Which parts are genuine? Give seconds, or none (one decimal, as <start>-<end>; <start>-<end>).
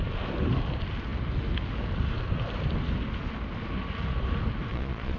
0.0-4.7